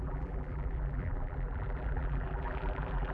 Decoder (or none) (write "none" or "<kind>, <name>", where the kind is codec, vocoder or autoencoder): vocoder, BigVGAN v2